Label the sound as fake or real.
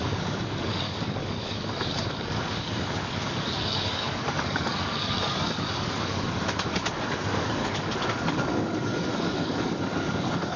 fake